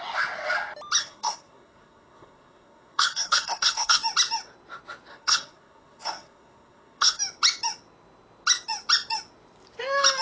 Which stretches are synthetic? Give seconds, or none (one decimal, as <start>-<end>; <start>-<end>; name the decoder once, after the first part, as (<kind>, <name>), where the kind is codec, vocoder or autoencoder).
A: 1.0-4.0 (codec, SNAC); 5.1-7.2